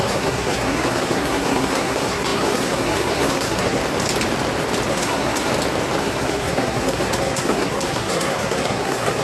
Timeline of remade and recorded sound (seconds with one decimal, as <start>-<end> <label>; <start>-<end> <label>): 0.0-3.8 remade; 3.8-4.9 recorded; 4.9-5.5 remade; 5.5-6.0 recorded; 6.0-9.2 remade